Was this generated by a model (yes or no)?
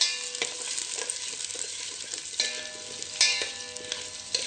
no